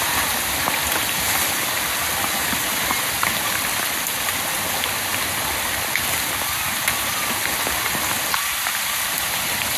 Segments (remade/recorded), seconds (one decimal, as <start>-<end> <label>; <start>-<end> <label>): 0.0-9.8 recorded